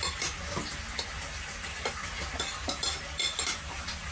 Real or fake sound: real